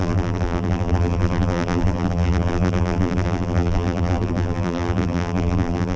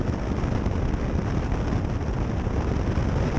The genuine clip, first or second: second